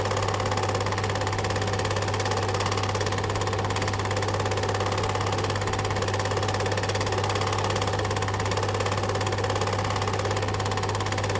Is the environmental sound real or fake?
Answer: real